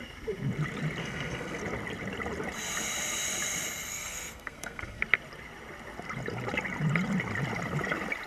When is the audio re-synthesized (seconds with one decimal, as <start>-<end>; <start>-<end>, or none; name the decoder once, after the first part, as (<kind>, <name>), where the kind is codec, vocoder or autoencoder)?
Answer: 1.0-1.6 (codec, SNAC); 3.9-5.0